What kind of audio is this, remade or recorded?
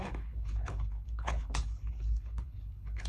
remade